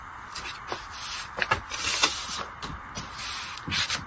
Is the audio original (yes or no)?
no